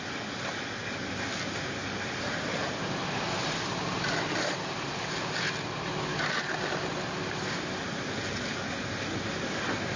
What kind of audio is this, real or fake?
real